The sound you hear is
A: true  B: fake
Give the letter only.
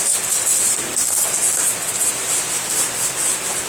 A